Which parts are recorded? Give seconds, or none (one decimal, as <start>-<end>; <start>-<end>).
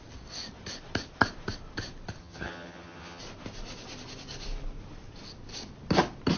0.0-2.2; 3.2-6.4